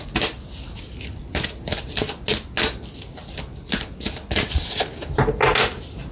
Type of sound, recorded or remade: recorded